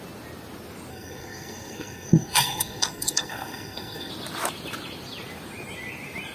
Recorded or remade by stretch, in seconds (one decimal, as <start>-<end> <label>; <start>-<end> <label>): 0.0-0.9 recorded; 0.9-4.1 remade; 4.1-6.3 recorded

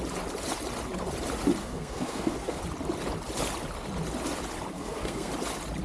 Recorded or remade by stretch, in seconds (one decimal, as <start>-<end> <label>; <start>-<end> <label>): 0.0-1.6 recorded; 1.6-2.6 remade; 2.6-4.7 recorded; 4.7-5.3 remade; 5.3-5.8 recorded

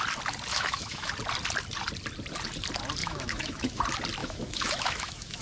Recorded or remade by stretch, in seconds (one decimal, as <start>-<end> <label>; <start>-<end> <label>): 0.0-0.5 recorded; 0.5-1.1 remade; 1.1-3.0 recorded; 3.0-3.8 remade; 3.8-4.2 recorded; 4.2-5.4 remade

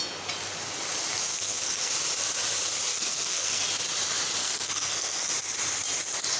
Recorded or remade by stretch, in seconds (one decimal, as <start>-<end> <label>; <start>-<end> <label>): 0.0-1.3 recorded; 1.3-1.9 remade; 1.9-2.9 recorded; 2.9-3.7 remade; 3.7-4.4 recorded; 4.4-5.3 remade; 5.3-6.4 recorded

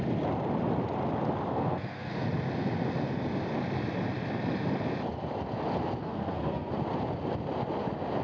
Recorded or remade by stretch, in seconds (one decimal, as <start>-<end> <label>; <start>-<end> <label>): 0.0-1.5 recorded; 1.5-2.1 remade; 2.1-6.0 recorded; 6.0-6.7 remade; 6.7-8.2 recorded

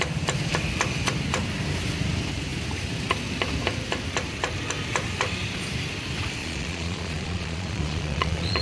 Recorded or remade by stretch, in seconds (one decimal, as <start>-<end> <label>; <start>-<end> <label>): 0.0-6.4 recorded; 6.4-8.6 remade

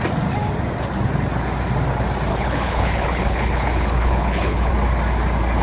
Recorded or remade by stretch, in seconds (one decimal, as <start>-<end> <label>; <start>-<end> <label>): 0.0-2.3 recorded; 2.3-4.7 remade; 4.7-5.6 recorded